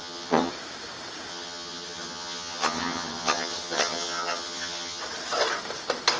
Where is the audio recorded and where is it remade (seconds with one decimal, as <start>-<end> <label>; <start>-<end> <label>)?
0.0-0.5 remade; 0.5-1.3 recorded; 1.3-5.0 remade; 5.0-6.2 recorded